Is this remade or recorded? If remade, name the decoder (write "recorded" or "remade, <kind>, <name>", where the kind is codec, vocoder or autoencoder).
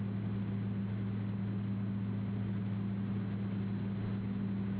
recorded